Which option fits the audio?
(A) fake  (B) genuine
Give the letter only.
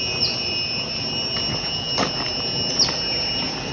B